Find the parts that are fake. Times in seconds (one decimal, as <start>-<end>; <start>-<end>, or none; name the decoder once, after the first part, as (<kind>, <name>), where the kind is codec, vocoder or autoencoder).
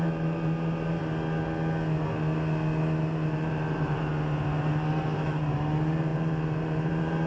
0.0-1.0 (vocoder, BigVGAN v2); 3.0-4.1; 4.6-7.3